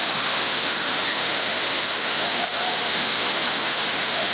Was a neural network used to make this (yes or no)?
yes